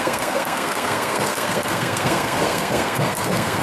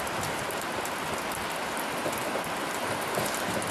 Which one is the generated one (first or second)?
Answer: first